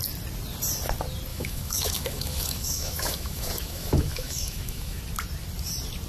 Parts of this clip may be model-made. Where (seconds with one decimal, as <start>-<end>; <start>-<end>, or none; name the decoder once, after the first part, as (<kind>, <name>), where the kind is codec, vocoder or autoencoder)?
1.3-5.0 (autoencoder, DAC-VAE)